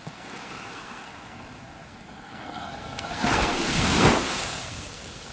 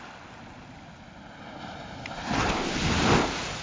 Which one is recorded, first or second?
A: second